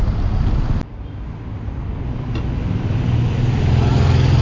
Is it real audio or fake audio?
real